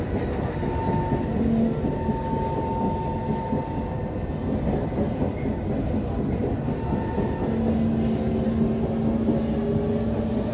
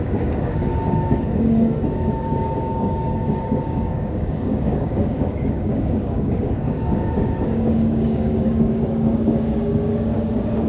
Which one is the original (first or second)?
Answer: first